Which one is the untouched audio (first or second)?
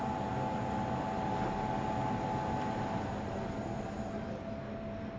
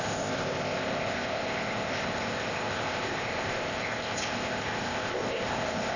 first